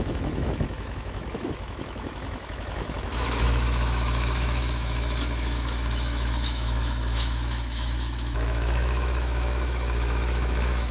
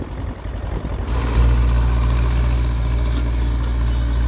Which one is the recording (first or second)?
second